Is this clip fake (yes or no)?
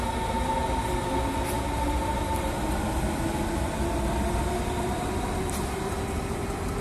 no